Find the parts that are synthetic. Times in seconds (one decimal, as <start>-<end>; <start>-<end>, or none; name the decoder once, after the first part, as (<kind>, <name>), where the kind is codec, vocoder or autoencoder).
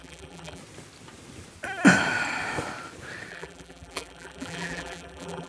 0.0-0.6 (vocoder, BigVGAN v2); 3.3-5.5